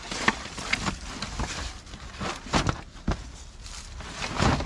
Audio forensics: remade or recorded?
recorded